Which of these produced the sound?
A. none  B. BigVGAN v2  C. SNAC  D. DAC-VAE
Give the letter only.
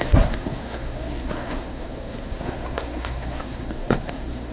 C